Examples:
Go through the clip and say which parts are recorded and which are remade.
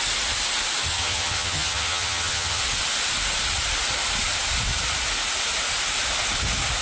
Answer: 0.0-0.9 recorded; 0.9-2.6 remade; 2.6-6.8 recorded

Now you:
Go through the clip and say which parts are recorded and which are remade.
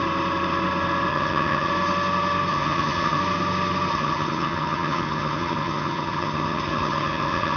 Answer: 0.0-1.1 recorded; 1.1-1.7 remade; 1.7-2.5 recorded; 2.5-3.2 remade; 3.2-3.9 recorded; 3.9-7.6 remade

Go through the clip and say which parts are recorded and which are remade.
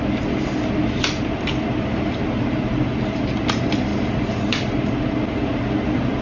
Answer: 0.0-6.2 recorded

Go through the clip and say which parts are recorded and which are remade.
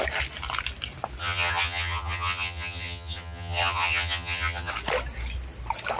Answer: 0.0-1.2 recorded; 1.2-4.7 remade; 4.7-6.0 recorded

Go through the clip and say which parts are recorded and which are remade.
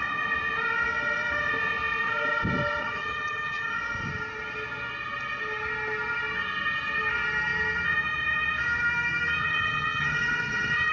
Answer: 0.0-2.8 recorded; 2.8-3.8 remade; 3.8-9.4 recorded; 9.4-10.9 remade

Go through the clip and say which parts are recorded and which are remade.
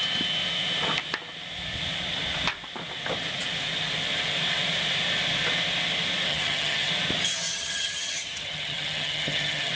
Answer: 0.0-6.3 recorded; 6.3-6.9 remade; 6.9-7.5 recorded; 7.5-9.7 remade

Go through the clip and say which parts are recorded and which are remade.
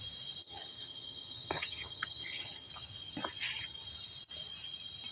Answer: 0.0-0.4 recorded; 0.4-2.7 remade; 2.7-5.1 recorded